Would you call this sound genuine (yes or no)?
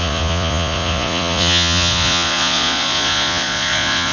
no